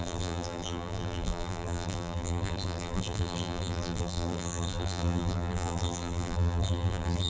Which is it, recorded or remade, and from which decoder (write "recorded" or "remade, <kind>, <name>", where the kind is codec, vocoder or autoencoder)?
remade, vocoder, BigVGAN v2